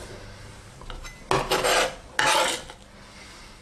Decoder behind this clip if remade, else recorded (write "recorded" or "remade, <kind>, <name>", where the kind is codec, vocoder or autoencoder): recorded